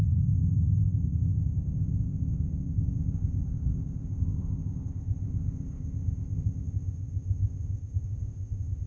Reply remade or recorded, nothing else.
remade